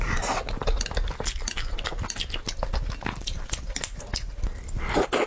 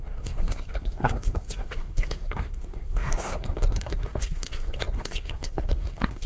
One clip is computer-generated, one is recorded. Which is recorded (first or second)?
first